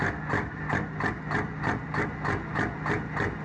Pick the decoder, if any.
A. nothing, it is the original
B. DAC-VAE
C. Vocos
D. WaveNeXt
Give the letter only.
A